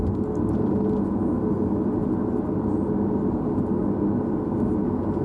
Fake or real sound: real